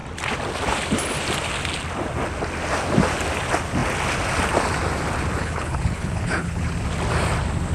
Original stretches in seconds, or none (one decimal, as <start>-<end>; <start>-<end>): 0.0-5.4; 6.6-7.7